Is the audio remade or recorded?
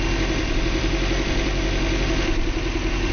remade